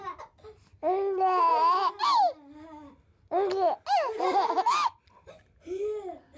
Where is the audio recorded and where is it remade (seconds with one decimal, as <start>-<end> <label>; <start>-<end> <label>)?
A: 0.0-6.4 recorded